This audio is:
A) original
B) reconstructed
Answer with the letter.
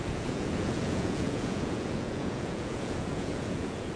B